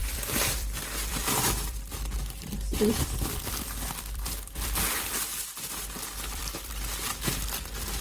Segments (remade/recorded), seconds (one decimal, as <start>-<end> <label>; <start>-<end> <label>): 0.0-4.8 remade; 4.8-5.3 recorded; 5.3-6.7 remade; 6.7-8.0 recorded